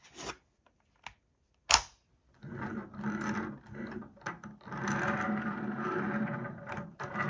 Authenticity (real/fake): real